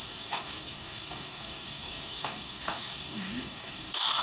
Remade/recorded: remade